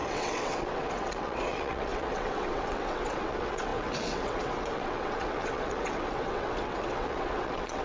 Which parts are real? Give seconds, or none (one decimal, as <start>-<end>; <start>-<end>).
none